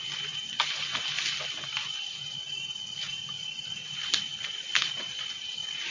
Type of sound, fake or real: real